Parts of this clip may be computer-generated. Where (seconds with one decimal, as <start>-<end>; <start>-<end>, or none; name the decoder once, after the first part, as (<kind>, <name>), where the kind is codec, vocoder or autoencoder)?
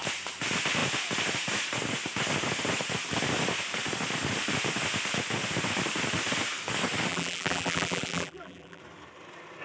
7.1-8.8 (vocoder, BigVGAN v2)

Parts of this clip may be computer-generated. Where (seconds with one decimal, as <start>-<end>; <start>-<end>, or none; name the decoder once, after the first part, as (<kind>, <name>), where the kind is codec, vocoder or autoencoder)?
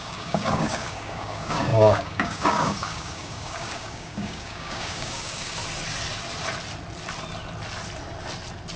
0.0-5.6 (codec, DAC)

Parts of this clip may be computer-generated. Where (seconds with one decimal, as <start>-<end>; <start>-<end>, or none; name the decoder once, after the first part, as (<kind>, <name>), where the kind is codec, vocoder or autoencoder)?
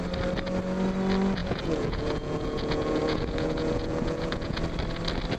1.4-4.6 (vocoder, Vocos)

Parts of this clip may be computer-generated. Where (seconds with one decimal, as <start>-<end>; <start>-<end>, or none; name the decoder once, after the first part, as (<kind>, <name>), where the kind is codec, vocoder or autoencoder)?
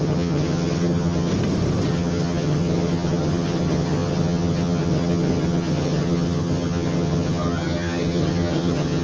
0.0-1.3 (vocoder, HiFi-GAN); 1.9-9.0